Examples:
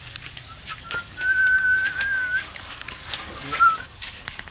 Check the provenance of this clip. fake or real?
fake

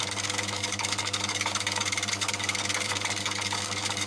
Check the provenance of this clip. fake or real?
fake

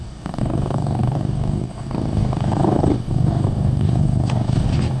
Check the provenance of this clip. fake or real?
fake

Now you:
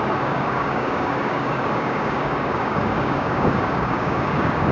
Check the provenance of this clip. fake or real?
fake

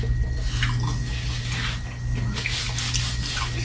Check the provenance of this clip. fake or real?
real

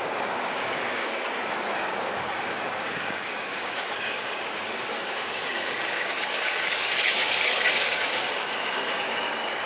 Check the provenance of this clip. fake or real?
fake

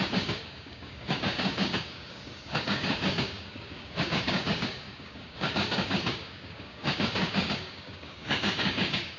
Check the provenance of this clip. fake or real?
fake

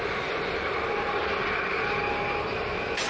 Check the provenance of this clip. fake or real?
real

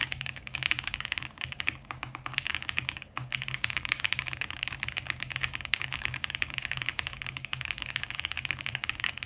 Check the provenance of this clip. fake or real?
fake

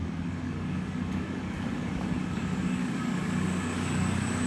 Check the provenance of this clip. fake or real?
fake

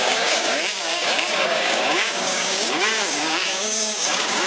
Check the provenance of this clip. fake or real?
fake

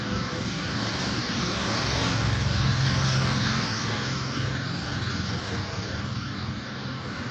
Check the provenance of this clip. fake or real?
fake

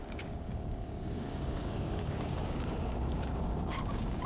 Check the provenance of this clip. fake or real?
fake